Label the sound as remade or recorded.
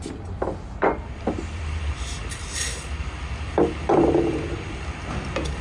recorded